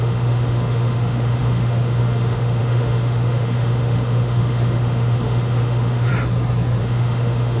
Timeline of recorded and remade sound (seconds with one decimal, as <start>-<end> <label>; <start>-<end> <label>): 0.0-6.1 remade; 6.1-6.8 recorded; 6.8-7.6 remade